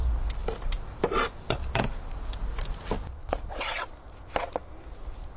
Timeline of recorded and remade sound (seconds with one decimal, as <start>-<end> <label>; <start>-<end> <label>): 0.0-5.4 recorded